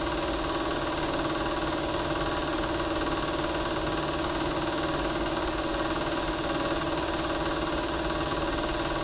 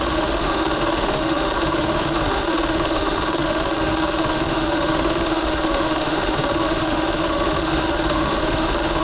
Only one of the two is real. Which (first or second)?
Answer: first